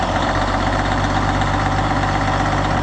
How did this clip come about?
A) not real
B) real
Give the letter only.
A